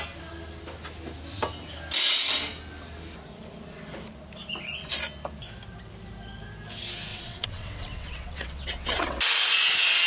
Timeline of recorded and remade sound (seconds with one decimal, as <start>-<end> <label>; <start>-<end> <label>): 0.0-7.1 recorded; 7.1-9.2 remade; 9.2-10.1 recorded